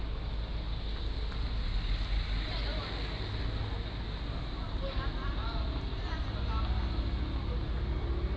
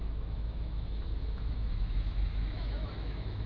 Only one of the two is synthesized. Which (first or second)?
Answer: second